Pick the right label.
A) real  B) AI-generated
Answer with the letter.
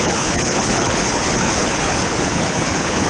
B